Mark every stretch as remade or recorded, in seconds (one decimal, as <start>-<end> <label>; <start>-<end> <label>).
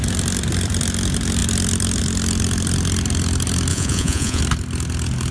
0.0-3.7 recorded; 3.7-4.4 remade; 4.4-5.3 recorded